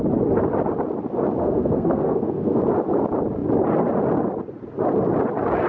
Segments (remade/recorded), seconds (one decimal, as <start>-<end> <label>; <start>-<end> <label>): 0.0-1.4 recorded; 1.4-2.6 remade; 2.6-5.7 recorded